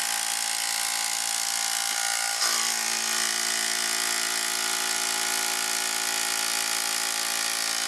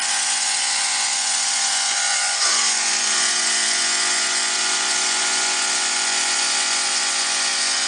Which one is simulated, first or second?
second